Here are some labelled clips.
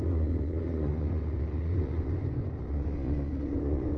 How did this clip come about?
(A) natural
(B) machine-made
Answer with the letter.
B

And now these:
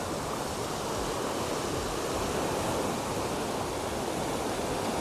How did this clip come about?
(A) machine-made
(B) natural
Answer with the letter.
B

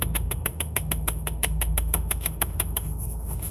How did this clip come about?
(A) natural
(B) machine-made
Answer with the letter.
B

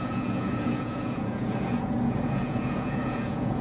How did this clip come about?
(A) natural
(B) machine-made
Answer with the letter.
B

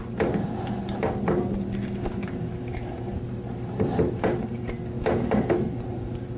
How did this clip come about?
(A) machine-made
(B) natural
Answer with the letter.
B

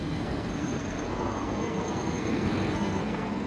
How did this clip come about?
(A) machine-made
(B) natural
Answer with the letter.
A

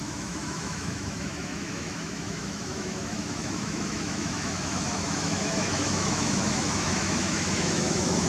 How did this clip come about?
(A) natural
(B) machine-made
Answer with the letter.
B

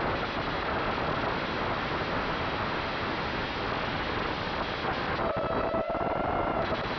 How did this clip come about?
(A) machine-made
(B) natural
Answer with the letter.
B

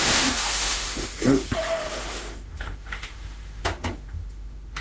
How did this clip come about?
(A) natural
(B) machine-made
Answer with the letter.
B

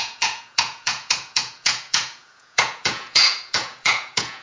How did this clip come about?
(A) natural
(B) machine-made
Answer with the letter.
B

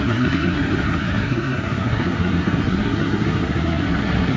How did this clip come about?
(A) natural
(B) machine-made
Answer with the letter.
B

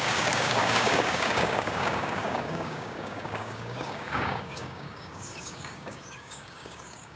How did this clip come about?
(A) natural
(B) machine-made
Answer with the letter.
B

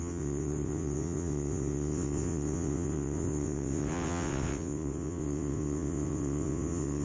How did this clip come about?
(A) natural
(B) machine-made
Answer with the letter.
B